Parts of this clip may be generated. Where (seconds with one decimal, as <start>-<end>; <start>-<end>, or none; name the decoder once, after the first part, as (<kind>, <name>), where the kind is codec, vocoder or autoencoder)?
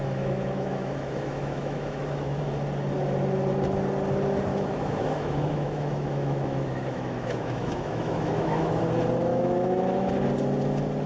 0.0-2.5 (autoencoder, DAC-VAE); 4.5-8.8; 9.3-10.1